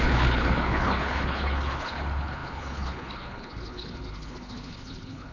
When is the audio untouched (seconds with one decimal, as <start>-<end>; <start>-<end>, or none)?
none